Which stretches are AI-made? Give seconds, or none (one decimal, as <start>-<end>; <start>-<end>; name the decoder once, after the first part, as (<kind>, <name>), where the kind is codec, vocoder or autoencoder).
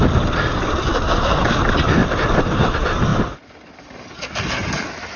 0.9-1.4 (vocoder, BigVGAN v2); 2.0-2.6